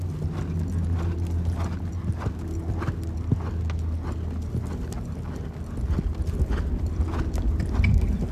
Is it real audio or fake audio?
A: real